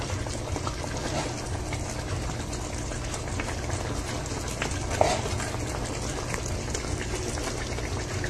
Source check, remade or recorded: recorded